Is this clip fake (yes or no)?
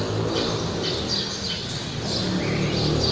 no